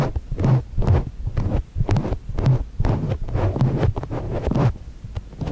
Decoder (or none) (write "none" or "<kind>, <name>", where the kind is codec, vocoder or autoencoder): none